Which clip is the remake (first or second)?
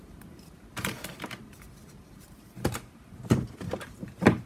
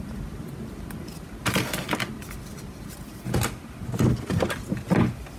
first